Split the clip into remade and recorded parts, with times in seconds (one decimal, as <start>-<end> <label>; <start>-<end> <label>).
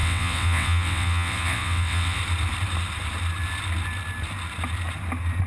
0.0-2.2 remade; 2.2-5.5 recorded